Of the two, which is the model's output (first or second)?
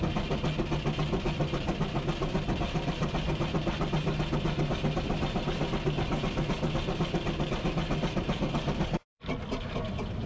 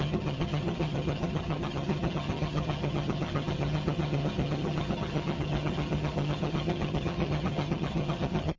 second